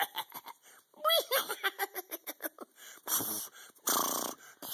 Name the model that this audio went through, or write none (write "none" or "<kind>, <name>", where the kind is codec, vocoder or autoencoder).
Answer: vocoder, BigVGAN v2